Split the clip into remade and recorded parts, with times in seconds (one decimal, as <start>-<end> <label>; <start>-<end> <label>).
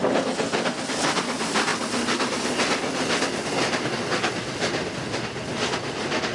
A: 0.0-6.3 recorded